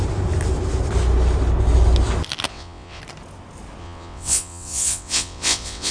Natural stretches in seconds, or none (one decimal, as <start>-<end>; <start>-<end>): 0.0-2.5; 3.0-3.8